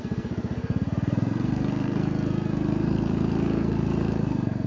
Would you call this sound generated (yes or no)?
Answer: yes